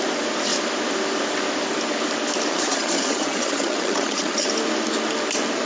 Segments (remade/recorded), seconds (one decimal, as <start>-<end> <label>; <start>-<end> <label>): 0.0-2.5 recorded; 2.5-4.5 remade; 4.5-5.7 recorded